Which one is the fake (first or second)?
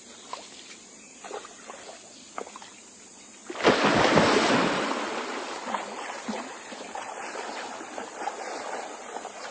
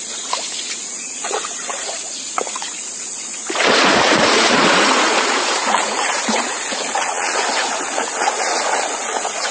second